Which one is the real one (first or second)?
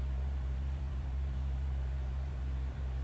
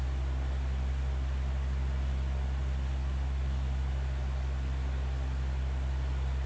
second